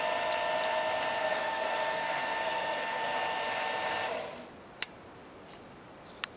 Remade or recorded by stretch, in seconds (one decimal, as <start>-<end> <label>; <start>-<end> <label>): 0.0-1.2 recorded; 1.2-3.0 remade; 3.0-6.4 recorded